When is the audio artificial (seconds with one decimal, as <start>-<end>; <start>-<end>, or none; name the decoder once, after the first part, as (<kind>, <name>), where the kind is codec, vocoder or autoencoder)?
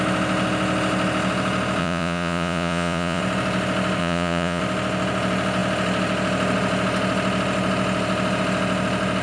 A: 1.8-3.2 (vocoder, Vocos); 4.0-4.6